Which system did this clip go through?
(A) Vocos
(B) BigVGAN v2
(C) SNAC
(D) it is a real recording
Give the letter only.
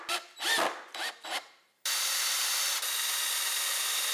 D